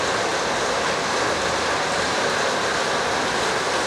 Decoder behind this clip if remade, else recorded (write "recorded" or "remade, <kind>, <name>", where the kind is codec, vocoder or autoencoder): recorded